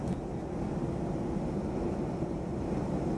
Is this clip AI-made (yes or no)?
no